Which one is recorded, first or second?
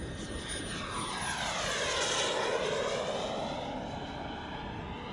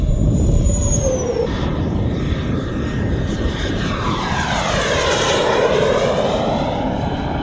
first